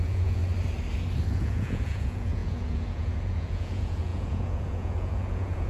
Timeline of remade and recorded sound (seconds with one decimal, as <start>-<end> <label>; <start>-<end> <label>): 0.0-0.4 remade; 0.4-1.3 recorded; 1.3-5.7 remade